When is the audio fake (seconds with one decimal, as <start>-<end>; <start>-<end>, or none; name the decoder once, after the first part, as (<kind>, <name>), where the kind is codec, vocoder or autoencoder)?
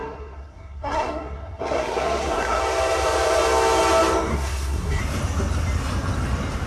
0.0-2.6 (codec, SNAC); 4.3-5.0